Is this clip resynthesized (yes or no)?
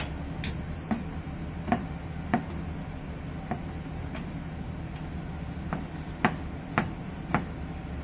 no